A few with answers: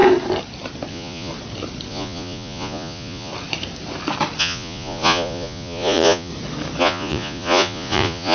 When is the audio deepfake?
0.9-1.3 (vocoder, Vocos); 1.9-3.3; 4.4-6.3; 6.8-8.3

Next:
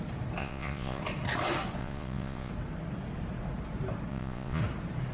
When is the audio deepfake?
0.4-1.0 (vocoder, Vocos); 1.8-2.5; 4.1-4.6

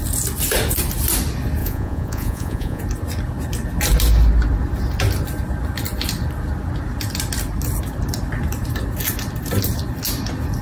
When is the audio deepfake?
1.6-2.8 (vocoder, Vocos)